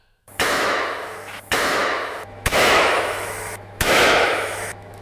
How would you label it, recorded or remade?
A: remade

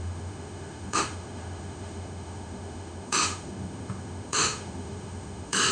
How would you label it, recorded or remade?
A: remade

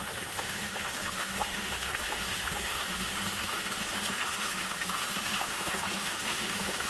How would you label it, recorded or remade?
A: remade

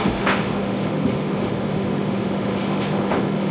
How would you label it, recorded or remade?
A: remade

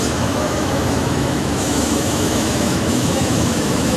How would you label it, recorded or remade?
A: remade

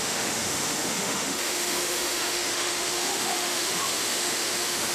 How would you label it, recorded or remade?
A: remade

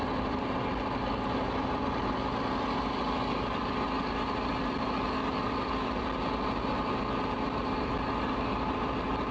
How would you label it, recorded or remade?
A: recorded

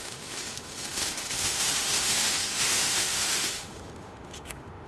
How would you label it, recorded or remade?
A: remade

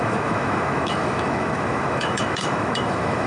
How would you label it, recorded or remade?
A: remade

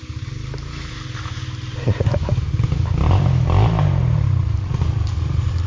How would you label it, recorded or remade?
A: recorded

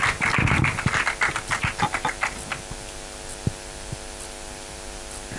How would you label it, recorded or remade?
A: recorded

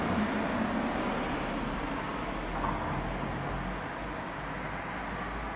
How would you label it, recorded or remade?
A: recorded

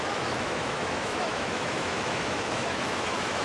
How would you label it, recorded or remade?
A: remade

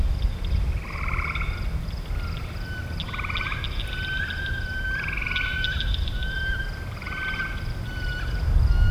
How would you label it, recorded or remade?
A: recorded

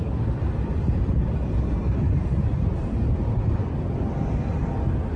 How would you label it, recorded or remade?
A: recorded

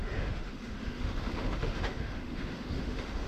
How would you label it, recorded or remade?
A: remade